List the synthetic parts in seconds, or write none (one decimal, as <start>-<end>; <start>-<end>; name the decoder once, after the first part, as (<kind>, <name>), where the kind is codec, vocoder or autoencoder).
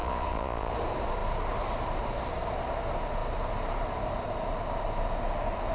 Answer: 0.0-0.7 (vocoder, Vocos)